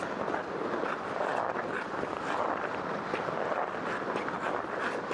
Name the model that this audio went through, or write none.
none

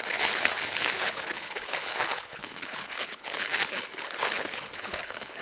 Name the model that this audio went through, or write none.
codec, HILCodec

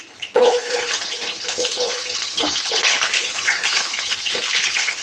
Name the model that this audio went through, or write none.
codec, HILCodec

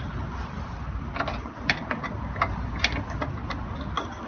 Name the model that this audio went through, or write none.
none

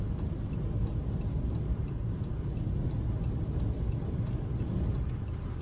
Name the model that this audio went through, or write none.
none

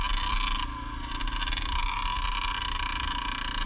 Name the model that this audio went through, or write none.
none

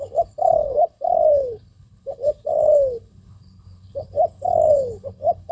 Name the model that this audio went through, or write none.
codec, HILCodec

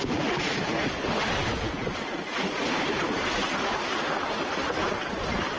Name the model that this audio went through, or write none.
none